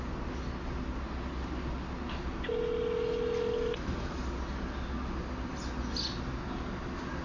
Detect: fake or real real